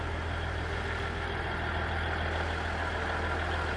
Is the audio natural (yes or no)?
yes